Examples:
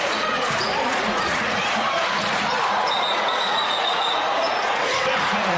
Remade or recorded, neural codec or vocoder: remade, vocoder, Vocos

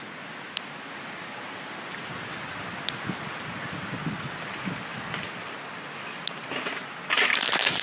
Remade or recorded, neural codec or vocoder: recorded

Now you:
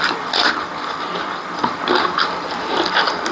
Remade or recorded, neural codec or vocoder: recorded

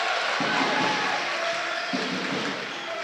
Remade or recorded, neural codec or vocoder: recorded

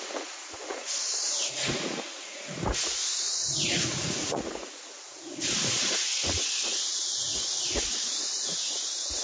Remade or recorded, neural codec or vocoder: remade, vocoder, Vocos